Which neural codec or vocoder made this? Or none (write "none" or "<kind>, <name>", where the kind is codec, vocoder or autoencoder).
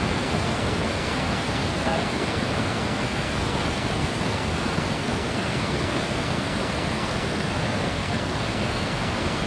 codec, SNAC